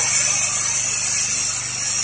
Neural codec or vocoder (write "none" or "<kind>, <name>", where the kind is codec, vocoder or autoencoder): none